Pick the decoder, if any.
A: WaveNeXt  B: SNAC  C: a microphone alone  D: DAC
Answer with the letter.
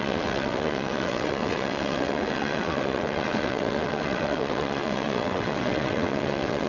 A